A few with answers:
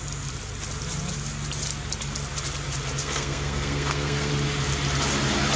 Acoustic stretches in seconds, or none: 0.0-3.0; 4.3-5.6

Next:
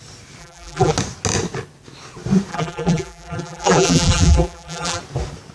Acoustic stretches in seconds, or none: 0.0-0.4; 0.9-2.5; 5.0-5.5

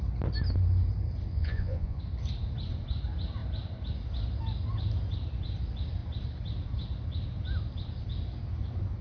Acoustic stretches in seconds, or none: 0.0-1.3; 2.0-9.0

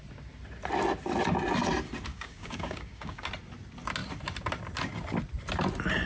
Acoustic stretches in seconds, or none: 0.0-2.1; 3.3-6.1

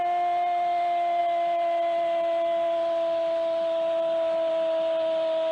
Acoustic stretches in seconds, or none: 0.0-5.5

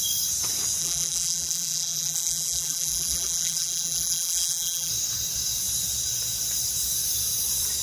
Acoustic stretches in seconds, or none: 0.0-0.8; 4.9-7.8